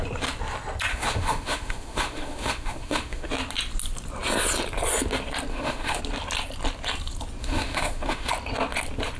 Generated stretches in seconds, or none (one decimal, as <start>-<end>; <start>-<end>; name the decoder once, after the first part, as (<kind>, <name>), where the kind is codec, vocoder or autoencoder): 0.9-3.3 (autoencoder, DAC-VAE); 5.5-6.0; 7.4-8.3